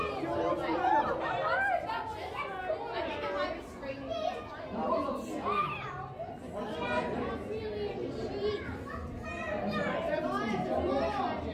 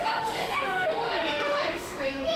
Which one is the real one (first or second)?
first